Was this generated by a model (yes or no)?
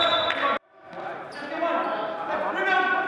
no